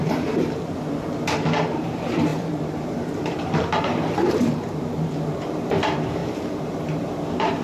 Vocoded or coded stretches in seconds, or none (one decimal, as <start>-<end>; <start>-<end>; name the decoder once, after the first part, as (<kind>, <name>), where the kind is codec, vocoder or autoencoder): 0.0-7.6 (vocoder, BigVGAN v2)